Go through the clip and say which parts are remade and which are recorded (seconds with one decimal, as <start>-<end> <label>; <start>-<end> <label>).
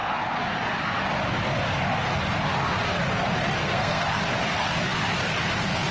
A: 0.0-3.6 recorded; 3.6-4.2 remade; 4.2-5.9 recorded